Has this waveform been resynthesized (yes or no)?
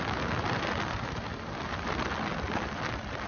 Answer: no